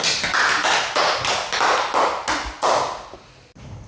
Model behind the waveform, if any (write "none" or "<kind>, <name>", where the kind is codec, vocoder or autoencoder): none